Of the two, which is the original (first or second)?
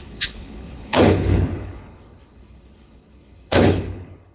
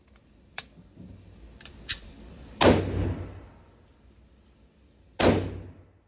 second